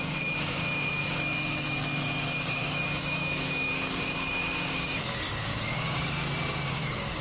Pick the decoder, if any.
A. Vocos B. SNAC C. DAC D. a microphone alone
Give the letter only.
C